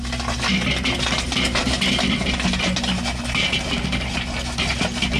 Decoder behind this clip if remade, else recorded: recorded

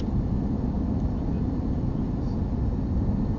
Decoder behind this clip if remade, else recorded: recorded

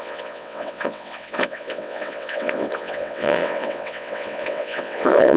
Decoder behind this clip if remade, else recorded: remade, vocoder, WaveNeXt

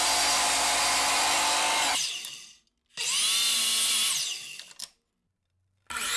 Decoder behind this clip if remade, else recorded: recorded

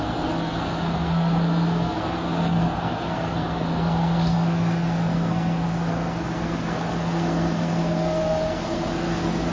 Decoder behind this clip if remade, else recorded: remade, codec, SNAC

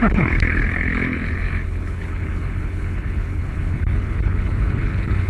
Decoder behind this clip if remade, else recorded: remade, codec, HILCodec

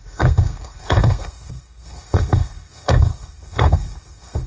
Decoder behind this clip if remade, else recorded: remade, codec, SNAC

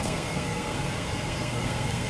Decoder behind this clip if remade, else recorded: remade, codec, SNAC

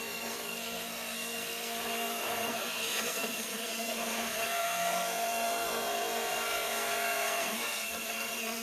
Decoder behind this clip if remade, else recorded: remade, codec, SNAC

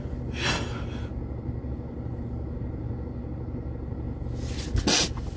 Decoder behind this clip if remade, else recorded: recorded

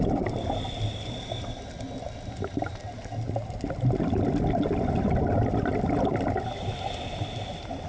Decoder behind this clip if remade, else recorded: recorded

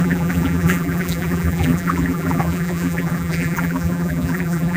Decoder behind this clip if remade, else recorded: remade, vocoder, BigVGAN v2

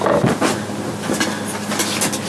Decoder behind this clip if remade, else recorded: recorded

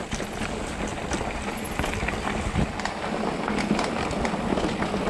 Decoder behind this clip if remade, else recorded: recorded